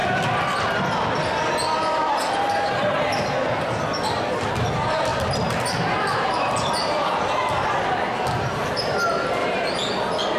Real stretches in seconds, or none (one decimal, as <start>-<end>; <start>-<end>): 0.0-9.4; 9.9-10.4